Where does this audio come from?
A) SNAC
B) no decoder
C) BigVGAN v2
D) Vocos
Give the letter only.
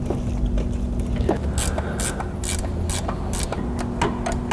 B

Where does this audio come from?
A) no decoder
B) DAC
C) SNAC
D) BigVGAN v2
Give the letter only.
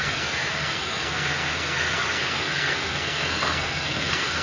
C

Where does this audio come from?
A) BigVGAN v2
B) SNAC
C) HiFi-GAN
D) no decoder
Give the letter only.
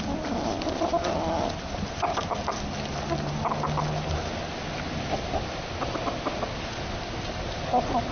D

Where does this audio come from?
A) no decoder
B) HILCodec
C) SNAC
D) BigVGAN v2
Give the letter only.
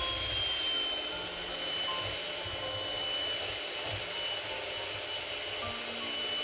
A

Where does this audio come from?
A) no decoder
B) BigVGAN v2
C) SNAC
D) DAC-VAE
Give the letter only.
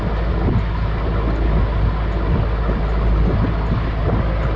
A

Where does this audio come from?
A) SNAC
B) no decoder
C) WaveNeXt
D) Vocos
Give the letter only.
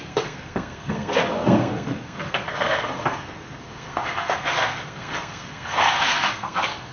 A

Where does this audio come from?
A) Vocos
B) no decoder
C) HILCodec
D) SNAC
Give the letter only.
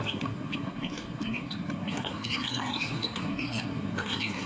D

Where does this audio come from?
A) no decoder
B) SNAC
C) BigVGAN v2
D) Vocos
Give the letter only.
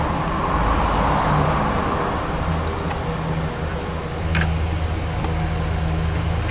A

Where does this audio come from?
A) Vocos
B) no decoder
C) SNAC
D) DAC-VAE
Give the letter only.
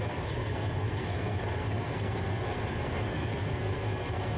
C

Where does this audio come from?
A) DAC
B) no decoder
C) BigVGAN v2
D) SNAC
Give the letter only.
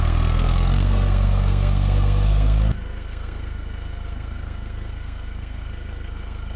D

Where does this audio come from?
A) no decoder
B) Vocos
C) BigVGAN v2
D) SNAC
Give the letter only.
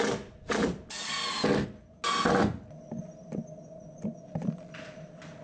A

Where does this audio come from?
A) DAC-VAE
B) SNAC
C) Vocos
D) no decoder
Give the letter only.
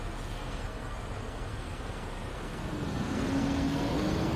B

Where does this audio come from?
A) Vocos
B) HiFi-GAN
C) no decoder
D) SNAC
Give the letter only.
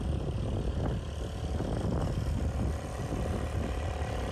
C